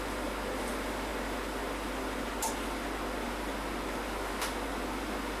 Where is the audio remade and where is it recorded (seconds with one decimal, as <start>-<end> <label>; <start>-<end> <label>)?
0.0-5.4 recorded